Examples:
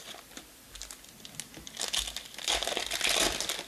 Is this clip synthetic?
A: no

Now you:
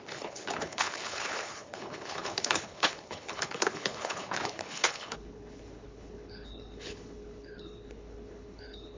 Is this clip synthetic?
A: yes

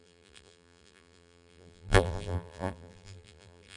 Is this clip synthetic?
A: yes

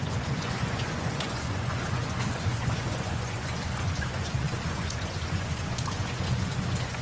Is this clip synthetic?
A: yes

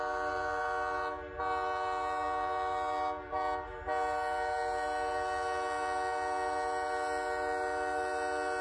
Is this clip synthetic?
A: no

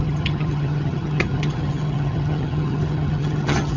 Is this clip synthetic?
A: yes